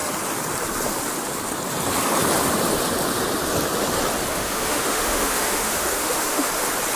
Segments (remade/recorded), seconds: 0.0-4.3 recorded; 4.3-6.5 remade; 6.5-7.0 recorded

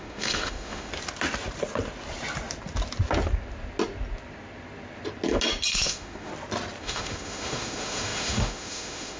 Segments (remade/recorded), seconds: 0.0-0.9 remade; 0.9-5.7 recorded; 5.7-6.3 remade; 6.3-6.8 recorded; 6.8-9.2 remade

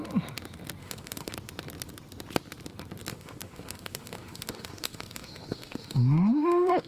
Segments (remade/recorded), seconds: 0.0-0.8 recorded; 0.8-1.3 remade; 1.3-3.1 recorded; 3.1-6.9 remade